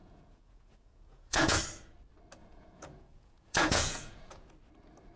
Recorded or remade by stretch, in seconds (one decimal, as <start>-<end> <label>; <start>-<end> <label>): 0.0-1.6 remade; 1.6-2.4 recorded; 2.4-4.5 remade; 4.5-5.2 recorded